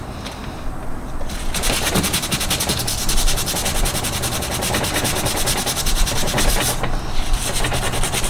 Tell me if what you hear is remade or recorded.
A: recorded